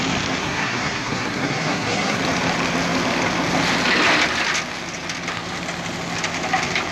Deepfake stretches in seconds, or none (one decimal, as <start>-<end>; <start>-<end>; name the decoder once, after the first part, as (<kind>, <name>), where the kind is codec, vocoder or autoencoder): 0.4-2.2 (codec, SNAC)

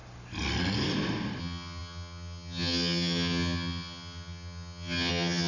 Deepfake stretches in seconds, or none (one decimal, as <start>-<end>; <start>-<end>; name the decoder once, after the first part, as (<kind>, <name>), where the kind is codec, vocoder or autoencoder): 1.4-5.5 (vocoder, HiFi-GAN)

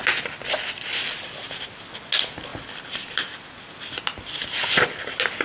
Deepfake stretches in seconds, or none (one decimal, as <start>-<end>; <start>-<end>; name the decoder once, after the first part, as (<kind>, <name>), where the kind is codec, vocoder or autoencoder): none